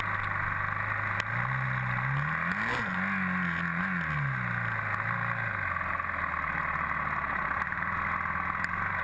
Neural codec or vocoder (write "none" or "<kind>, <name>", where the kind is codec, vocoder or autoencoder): none